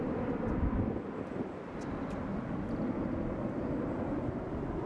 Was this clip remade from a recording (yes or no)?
no